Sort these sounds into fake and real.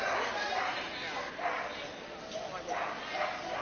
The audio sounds real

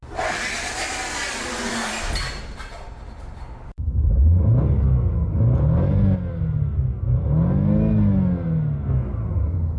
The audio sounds real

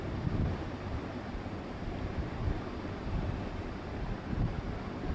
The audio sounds fake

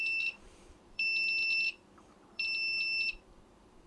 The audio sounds fake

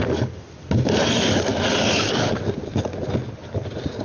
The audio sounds real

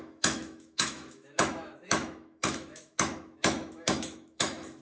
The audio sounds fake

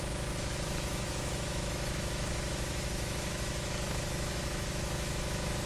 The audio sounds fake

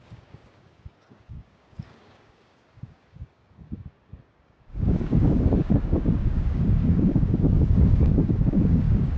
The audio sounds fake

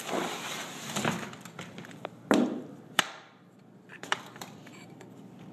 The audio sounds fake